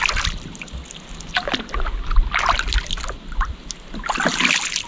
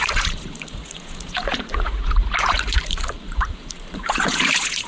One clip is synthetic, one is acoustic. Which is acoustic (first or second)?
first